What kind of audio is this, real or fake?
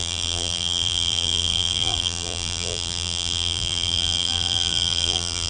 fake